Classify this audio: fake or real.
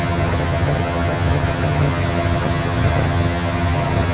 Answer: fake